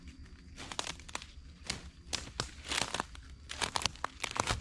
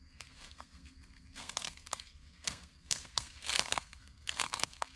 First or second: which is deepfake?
second